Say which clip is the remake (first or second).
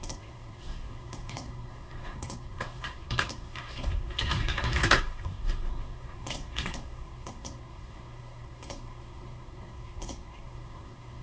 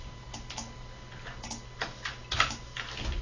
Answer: first